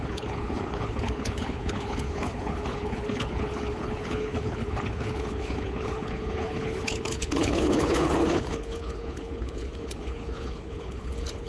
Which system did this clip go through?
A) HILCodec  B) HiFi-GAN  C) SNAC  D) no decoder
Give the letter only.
A